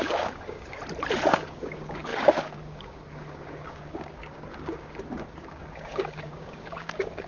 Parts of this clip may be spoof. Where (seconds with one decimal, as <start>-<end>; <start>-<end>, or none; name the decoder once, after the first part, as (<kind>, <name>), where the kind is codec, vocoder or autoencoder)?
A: 0.0-0.8 (codec, DAC); 1.3-7.3